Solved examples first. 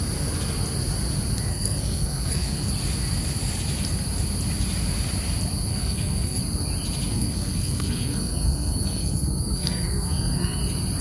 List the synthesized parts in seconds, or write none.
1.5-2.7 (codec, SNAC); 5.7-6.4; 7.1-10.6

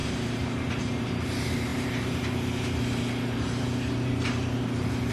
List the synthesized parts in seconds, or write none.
0.0-5.1 (vocoder, BigVGAN v2)

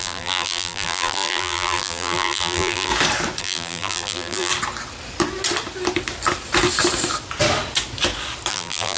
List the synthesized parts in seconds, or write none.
0.0-2.9 (vocoder, BigVGAN v2); 3.4-4.5; 8.5-9.0

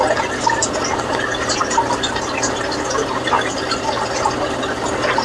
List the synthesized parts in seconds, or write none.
none

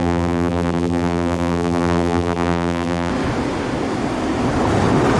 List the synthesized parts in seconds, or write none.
0.0-3.1 (vocoder, BigVGAN v2)

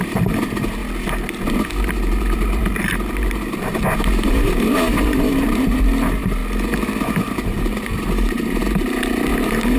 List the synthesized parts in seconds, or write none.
0.0-0.8 (vocoder, BigVGAN v2); 1.5-3.7; 4.3-6.4; 7.0-9.8

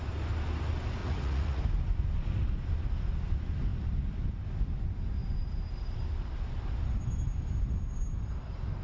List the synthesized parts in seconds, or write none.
1.0-1.6 (vocoder, Vocos)